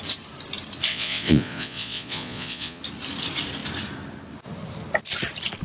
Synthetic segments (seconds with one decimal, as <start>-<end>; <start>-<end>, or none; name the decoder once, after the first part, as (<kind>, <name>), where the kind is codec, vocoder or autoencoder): 0.9-2.8 (vocoder, Vocos)